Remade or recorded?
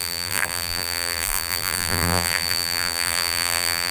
remade